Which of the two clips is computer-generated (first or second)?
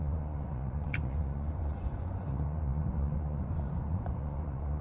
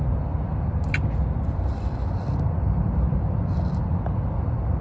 first